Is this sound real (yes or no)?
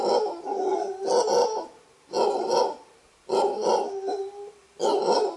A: yes